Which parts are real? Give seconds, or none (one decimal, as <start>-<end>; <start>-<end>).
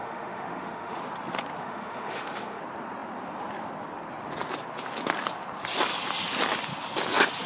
1.0-1.6; 2.6-7.5